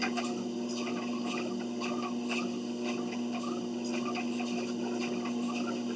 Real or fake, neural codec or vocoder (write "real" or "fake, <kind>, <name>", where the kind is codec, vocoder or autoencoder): real